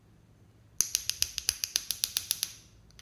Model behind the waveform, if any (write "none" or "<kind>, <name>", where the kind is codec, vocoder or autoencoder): none